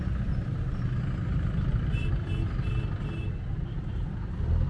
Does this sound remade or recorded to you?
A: recorded